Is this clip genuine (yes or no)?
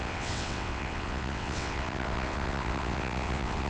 no